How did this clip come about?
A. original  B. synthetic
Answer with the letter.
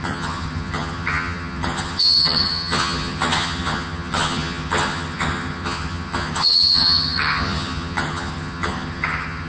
B